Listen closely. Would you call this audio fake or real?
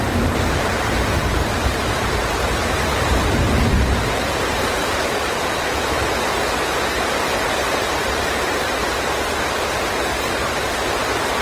fake